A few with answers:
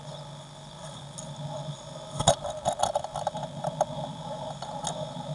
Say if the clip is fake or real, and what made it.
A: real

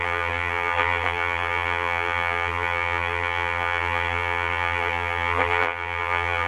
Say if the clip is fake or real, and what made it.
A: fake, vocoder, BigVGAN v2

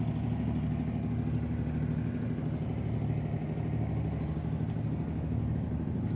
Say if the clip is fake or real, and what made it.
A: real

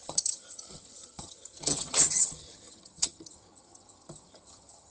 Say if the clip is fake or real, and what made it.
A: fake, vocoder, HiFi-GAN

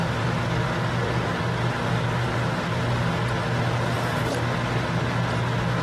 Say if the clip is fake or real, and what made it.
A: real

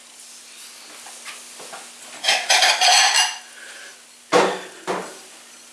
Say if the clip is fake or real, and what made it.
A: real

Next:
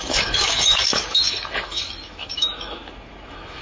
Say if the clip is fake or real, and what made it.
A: fake, autoencoder, DAC-VAE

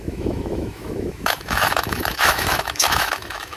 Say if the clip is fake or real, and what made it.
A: fake, autoencoder, DAC-VAE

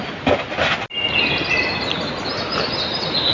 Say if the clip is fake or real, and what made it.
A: real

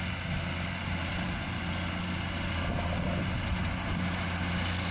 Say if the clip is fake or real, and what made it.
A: real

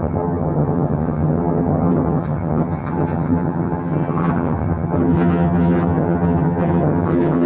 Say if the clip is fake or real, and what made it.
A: fake, vocoder, HiFi-GAN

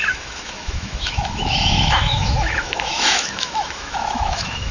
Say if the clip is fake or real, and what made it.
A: fake, autoencoder, DAC-VAE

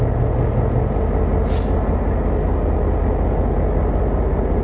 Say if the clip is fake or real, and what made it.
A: real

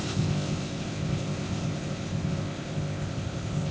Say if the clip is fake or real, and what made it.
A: fake, codec, ZipCodec